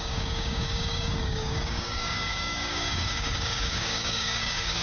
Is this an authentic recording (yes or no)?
no